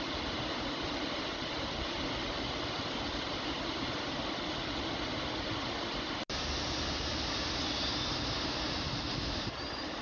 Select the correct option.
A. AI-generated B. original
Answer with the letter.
B